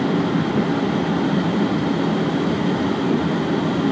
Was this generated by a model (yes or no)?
no